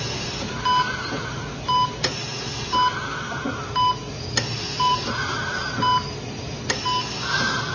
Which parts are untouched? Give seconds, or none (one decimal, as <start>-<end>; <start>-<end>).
0.0-7.7

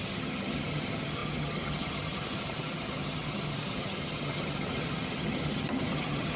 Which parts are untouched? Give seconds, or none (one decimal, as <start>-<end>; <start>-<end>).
none

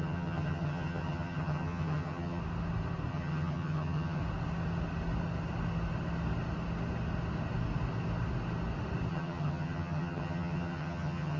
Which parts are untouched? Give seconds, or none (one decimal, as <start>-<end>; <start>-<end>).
2.4-3.1; 4.2-9.1

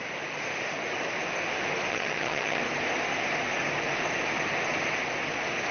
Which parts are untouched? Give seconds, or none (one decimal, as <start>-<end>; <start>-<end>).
0.0-1.9; 2.6-5.7

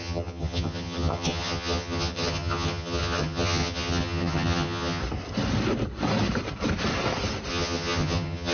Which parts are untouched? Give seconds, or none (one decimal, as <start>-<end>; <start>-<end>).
5.0-7.5

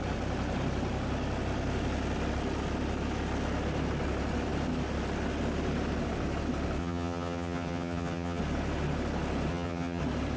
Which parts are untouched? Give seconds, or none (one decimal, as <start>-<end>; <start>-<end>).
0.0-6.8; 8.4-9.5; 10.0-10.4

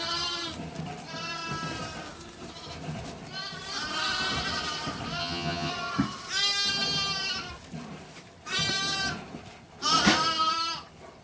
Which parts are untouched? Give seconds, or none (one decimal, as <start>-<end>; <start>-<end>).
0.0-5.2; 5.7-11.2

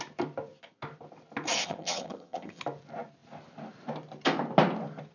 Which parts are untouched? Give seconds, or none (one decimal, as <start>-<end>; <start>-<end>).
0.0-1.6; 2.6-5.1